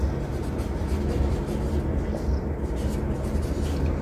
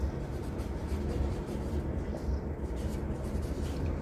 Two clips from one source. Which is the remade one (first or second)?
second